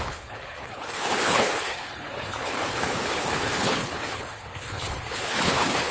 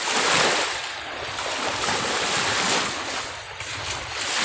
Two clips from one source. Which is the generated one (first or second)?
first